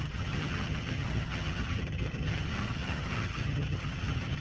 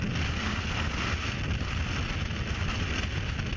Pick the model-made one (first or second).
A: first